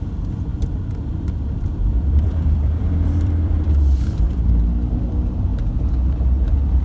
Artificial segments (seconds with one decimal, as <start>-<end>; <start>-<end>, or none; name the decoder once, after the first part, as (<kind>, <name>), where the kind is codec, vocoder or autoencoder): 0.5-4.6 (vocoder, BigVGAN v2)